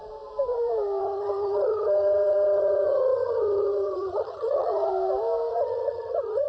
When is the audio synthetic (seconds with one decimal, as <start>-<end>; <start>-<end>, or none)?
1.0-4.9; 5.5-6.5